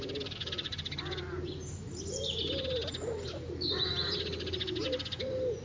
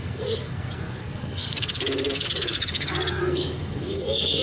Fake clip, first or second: second